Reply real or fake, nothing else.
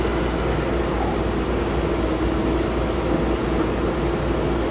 real